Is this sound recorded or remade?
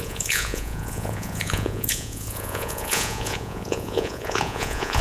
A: remade